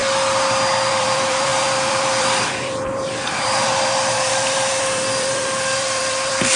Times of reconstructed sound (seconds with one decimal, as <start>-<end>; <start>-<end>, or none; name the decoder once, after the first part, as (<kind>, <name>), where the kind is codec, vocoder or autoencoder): 0.9-6.6 (vocoder, BigVGAN v2)

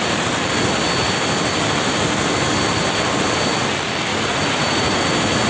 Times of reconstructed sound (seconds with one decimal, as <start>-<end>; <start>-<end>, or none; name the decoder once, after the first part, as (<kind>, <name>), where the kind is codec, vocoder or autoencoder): 4.1-5.0 (vocoder, Vocos)

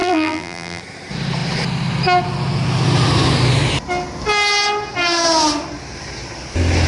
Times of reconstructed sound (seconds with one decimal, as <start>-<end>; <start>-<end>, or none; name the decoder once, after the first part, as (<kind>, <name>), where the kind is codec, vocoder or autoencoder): 0.0-0.8 (vocoder, BigVGAN v2)